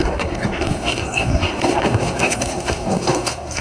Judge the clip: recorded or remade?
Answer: remade